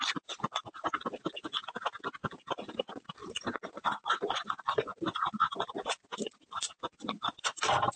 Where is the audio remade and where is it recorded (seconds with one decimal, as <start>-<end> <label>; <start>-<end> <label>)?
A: 0.0-8.0 recorded